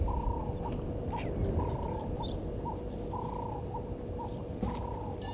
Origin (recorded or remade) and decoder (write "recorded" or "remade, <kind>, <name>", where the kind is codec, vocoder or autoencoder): recorded